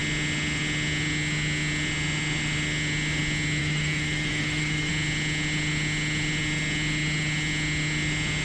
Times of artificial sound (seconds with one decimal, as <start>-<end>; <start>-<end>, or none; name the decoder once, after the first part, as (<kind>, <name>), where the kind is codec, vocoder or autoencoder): 3.6-4.9 (autoencoder, DAC-VAE)